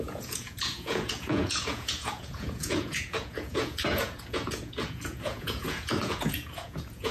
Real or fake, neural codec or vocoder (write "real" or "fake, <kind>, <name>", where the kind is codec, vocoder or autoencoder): fake, vocoder, Vocos